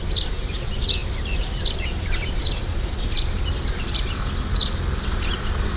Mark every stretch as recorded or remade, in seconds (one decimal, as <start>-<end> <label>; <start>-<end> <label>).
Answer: 0.0-5.8 recorded